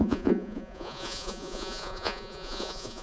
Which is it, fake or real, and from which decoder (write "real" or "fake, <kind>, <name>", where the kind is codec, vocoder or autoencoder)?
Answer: fake, vocoder, Vocos